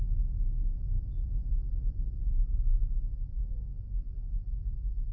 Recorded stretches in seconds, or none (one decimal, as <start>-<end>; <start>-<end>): 0.0-1.4; 2.2-5.1